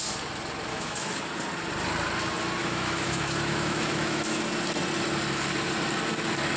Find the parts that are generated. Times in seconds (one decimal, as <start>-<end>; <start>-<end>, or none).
0.7-1.2; 2.6-4.4